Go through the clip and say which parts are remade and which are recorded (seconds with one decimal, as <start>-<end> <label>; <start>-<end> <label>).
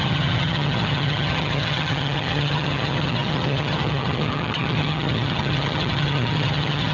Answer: 0.0-6.9 remade